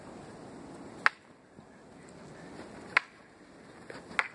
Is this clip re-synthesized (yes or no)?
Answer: no